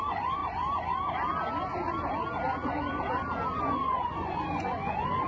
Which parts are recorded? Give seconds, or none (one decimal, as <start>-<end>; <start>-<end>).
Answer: 0.4-3.6